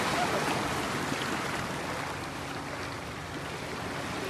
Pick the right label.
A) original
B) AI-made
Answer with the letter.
A